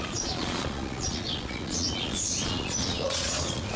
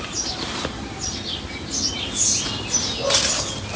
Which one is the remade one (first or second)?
first